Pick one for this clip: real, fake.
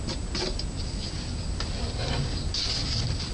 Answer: real